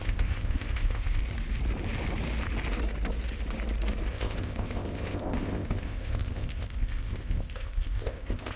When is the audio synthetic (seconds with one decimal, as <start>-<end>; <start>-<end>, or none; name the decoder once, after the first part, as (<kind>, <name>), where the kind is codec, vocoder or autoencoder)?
0.0-1.2 (codec, ZipCodec); 4.1-8.6